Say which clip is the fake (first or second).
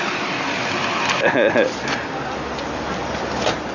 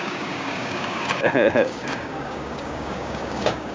second